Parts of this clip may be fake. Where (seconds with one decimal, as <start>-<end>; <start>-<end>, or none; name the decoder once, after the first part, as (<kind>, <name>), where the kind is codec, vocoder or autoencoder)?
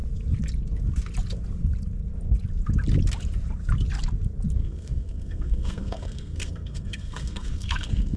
4.6-8.2 (codec, SNAC)